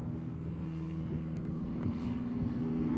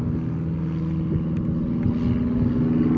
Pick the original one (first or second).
second